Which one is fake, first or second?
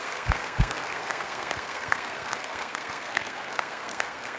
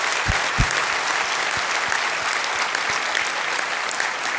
first